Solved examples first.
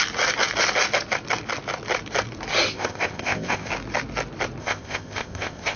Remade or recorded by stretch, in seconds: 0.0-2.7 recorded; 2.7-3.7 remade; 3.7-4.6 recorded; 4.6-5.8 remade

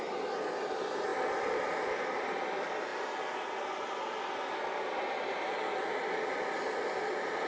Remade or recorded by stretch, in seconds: 0.0-7.5 recorded

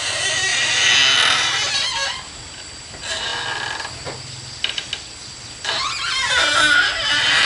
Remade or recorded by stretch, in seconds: 0.0-7.5 recorded